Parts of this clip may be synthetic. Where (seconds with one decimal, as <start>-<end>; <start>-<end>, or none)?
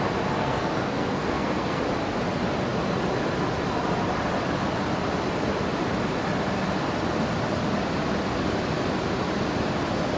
0.4-1.8